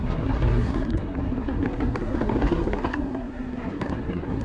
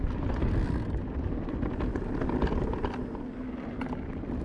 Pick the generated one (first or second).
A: first